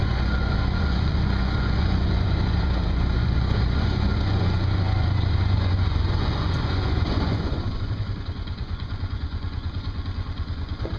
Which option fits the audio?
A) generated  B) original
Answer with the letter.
A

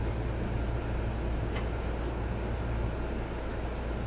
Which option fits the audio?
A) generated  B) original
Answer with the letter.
B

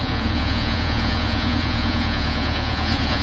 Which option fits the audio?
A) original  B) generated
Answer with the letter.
B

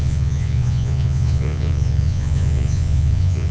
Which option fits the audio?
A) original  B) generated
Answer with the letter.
B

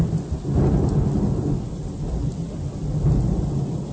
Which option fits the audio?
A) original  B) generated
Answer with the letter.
A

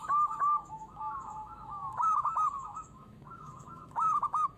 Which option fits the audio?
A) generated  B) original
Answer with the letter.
A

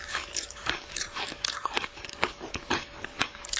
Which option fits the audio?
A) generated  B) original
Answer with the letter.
A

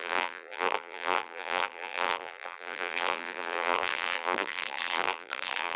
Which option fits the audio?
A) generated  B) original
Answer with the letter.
A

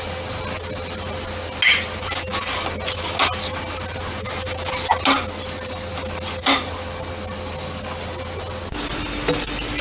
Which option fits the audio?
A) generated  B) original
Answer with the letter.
B